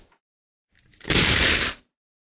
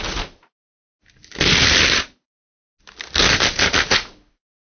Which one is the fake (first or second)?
first